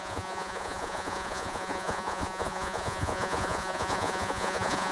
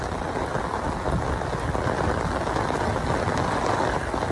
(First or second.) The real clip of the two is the second